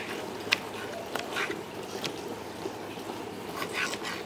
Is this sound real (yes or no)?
yes